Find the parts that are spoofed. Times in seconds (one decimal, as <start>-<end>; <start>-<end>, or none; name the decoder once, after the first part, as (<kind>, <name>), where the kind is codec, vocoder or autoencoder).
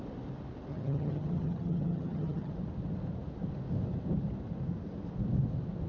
0.7-2.5 (vocoder, HiFi-GAN)